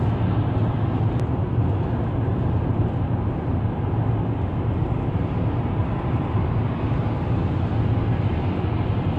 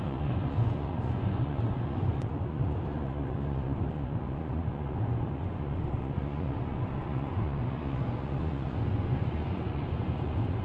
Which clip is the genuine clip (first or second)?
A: first